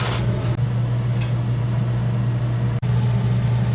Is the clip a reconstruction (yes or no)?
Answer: no